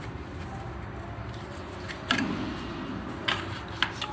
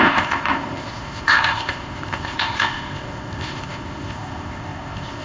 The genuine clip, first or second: first